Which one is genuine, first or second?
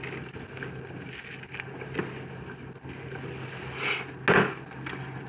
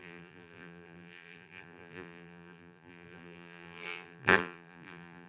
first